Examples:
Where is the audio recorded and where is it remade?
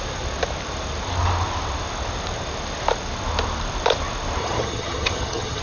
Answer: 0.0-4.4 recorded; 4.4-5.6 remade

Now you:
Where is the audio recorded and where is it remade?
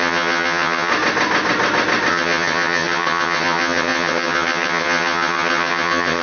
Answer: 0.0-0.9 remade; 0.9-2.1 recorded; 2.1-6.2 remade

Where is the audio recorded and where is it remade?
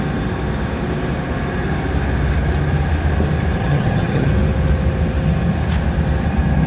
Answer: 0.0-3.6 recorded; 3.6-4.3 remade; 4.3-6.7 recorded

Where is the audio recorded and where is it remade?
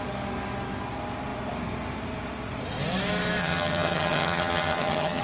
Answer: 0.0-3.4 recorded; 3.4-5.2 remade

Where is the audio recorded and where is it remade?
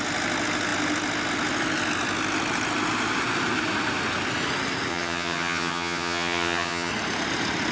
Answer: 0.0-4.9 recorded; 4.9-6.9 remade; 6.9-7.7 recorded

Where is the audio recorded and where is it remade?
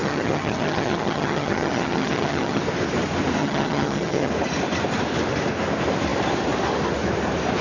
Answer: 0.0-2.6 remade; 2.6-3.4 recorded; 3.4-4.3 remade; 4.3-7.6 recorded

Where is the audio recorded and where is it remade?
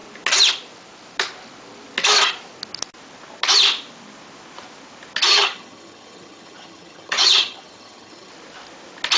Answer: 0.0-5.3 recorded; 5.3-8.3 remade; 8.3-9.2 recorded